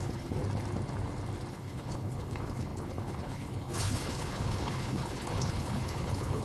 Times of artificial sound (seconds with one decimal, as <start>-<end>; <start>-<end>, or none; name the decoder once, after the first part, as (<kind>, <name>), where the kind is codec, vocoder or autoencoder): 0.0-0.4 (codec, HILCodec); 1.5-6.4